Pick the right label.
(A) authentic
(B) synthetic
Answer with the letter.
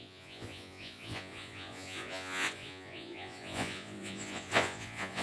B